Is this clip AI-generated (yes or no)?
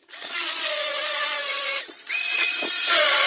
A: yes